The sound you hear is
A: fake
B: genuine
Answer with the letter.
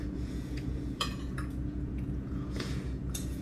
A